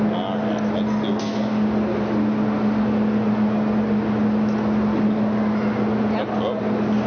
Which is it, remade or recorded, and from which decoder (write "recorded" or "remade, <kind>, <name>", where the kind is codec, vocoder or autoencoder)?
recorded